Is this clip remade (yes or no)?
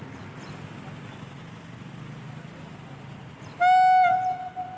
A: no